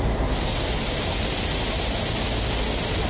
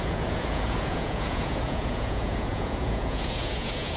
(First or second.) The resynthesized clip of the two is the second